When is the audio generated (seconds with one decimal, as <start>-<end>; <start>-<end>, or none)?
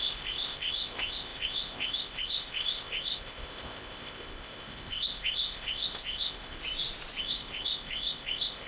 0.0-6.6; 7.2-8.7